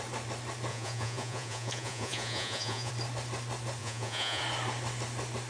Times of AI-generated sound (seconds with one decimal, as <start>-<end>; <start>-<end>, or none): 0.7-2.9; 3.8-4.4